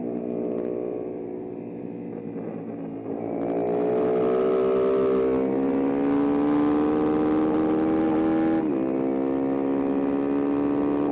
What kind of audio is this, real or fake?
real